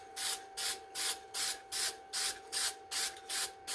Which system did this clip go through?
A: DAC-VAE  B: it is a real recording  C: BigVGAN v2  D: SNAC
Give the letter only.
B